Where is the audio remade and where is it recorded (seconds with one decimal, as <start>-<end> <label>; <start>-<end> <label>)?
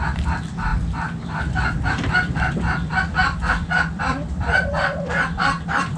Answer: 0.0-0.7 remade; 0.7-1.4 recorded; 1.4-6.0 remade